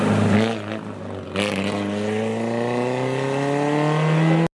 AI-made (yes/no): no